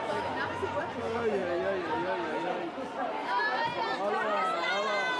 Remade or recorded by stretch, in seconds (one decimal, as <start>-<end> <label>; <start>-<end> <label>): 0.0-5.2 recorded